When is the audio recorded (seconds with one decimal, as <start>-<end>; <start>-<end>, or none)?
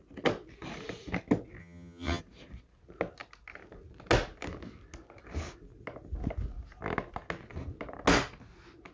0.0-1.6; 2.2-8.9